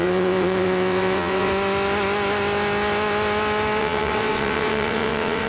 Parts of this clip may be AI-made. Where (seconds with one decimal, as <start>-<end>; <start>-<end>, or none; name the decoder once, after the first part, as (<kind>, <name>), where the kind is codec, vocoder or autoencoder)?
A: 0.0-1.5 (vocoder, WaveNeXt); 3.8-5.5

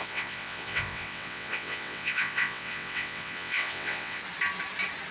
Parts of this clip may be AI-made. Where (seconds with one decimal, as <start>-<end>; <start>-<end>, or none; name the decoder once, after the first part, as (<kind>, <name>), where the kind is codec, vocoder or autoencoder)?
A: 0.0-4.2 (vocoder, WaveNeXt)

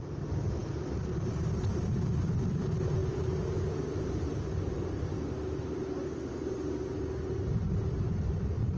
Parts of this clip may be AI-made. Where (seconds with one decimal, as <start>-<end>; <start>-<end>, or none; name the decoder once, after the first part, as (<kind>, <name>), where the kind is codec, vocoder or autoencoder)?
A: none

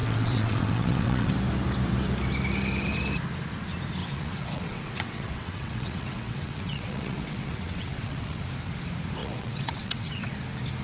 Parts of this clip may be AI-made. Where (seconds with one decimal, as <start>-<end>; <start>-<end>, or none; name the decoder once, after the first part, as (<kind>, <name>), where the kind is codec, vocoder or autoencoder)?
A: 0.0-1.3 (vocoder, WaveNeXt); 4.0-8.4; 9.2-10.3

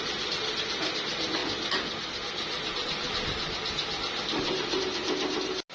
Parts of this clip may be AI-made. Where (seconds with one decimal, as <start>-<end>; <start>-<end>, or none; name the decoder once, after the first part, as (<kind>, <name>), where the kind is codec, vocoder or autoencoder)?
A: none

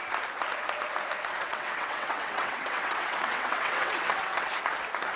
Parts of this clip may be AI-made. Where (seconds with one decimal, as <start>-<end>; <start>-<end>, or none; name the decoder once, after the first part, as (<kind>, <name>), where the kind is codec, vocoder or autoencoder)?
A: 1.4-4.5 (vocoder, WaveNeXt)

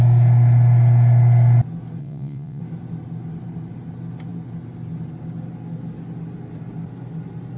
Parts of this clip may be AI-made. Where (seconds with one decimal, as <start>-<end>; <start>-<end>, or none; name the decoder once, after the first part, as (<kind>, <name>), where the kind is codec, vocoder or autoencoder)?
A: 2.0-2.6 (vocoder, WaveNeXt)

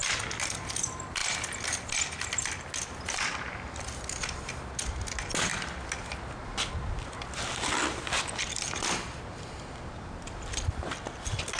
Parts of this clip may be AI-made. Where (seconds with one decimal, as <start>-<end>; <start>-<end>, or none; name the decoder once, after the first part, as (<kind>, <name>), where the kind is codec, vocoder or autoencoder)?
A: none